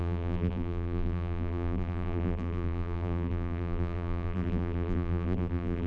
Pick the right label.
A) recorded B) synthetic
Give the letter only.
B